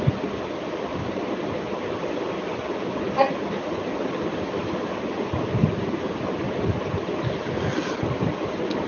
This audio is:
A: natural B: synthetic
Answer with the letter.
A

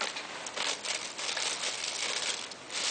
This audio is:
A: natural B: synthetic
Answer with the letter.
A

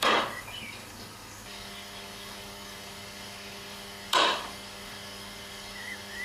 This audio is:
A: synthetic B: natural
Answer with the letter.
A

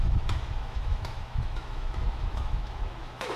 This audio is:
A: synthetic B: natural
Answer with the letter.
A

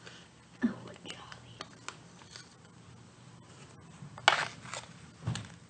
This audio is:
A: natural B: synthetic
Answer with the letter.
A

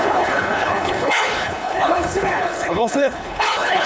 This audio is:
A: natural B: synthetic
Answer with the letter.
B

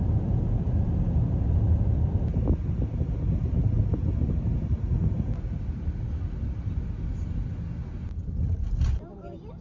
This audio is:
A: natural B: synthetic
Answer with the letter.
A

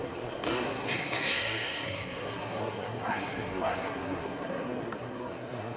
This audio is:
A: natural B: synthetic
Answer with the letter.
B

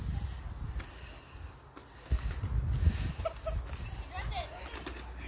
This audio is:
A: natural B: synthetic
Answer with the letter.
A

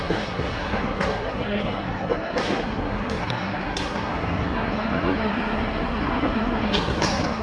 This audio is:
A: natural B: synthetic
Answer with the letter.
B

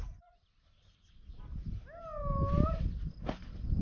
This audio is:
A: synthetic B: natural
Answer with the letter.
B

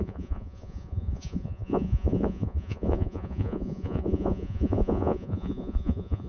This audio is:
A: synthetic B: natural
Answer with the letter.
A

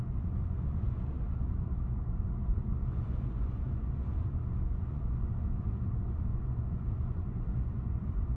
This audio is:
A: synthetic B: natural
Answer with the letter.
A